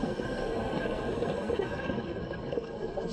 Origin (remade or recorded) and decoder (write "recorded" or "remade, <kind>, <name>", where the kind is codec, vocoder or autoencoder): remade, codec, SNAC